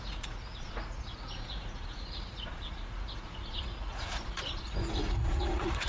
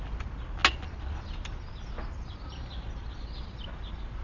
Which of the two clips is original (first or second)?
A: second